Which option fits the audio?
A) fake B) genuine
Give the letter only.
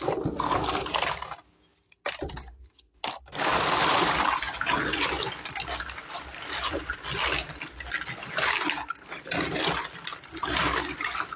B